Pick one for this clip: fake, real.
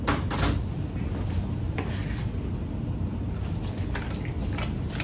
real